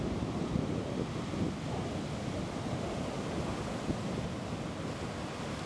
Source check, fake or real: real